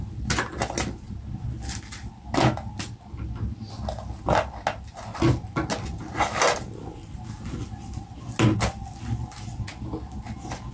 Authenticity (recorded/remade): recorded